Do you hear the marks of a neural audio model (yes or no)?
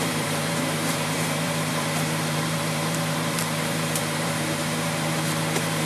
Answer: yes